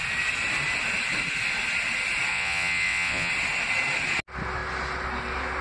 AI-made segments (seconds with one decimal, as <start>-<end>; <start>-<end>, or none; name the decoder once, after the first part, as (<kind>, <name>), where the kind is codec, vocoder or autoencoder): 2.3-3.3 (vocoder, WaveNeXt)